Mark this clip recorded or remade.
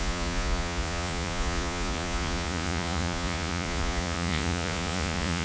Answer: remade